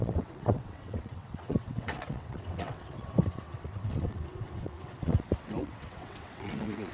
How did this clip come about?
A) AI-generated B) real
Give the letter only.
A